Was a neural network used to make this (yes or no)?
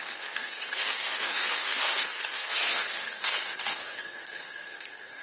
yes